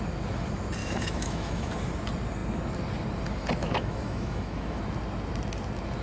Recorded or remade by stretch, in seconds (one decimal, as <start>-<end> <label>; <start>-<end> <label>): 0.0-0.8 recorded; 0.8-1.7 remade; 1.7-3.6 recorded; 3.6-4.8 remade; 4.8-6.0 recorded